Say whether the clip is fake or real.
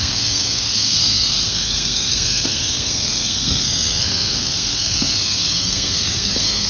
fake